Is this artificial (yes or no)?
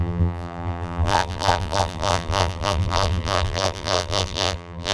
yes